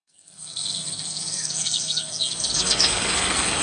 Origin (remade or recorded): remade